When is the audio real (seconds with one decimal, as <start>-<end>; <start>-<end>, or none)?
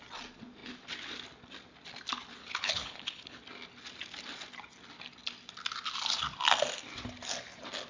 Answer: 0.0-2.4; 3.4-7.9